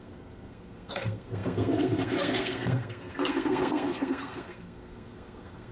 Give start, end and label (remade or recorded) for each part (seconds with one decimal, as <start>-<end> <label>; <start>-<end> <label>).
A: 0.0-5.7 remade